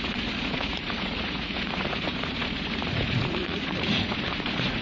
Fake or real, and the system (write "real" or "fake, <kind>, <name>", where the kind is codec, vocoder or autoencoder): fake, vocoder, Vocos